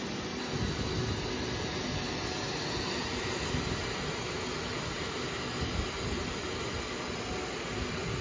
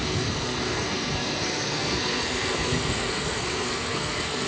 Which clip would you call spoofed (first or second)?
second